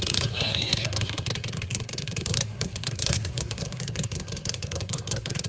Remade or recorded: remade